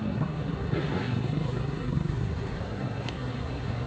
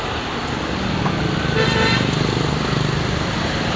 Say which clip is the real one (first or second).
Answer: second